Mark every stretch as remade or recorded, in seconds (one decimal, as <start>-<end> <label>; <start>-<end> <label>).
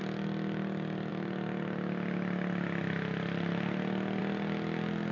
0.0-5.1 recorded